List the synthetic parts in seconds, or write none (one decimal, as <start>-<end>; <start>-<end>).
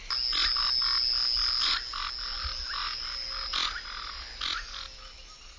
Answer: none